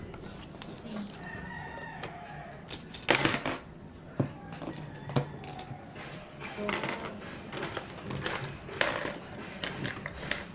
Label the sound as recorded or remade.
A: recorded